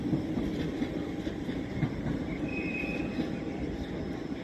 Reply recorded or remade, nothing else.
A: recorded